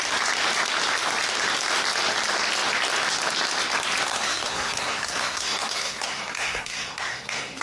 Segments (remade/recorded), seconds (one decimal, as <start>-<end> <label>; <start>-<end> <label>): 0.0-4.1 recorded; 4.1-7.6 remade